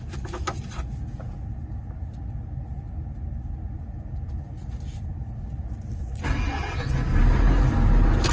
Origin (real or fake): real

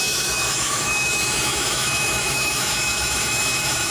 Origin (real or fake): fake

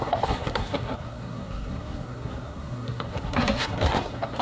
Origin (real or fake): fake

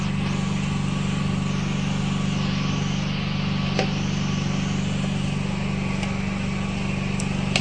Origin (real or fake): real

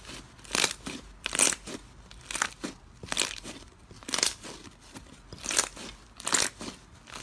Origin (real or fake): real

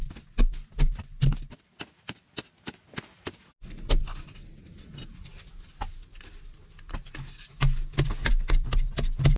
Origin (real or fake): real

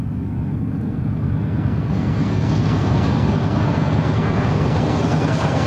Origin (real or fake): fake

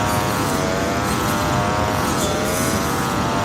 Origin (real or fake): fake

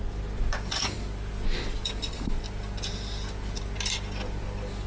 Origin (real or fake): real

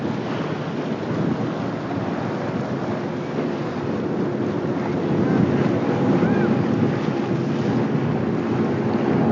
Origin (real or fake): real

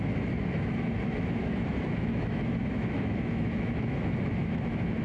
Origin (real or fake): fake